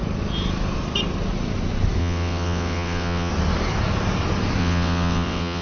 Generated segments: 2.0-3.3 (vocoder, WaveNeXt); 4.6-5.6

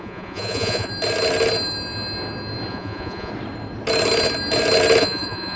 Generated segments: 0.0-0.9 (vocoder, Vocos); 2.7-3.3; 5.0-5.6

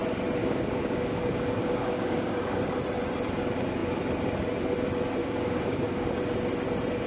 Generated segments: 0.4-2.6 (codec, DAC); 5.2-6.1